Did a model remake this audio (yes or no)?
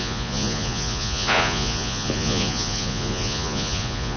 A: yes